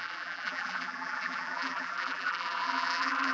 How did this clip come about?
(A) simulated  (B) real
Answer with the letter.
A